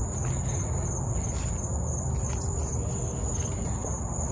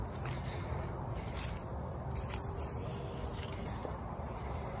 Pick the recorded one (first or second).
first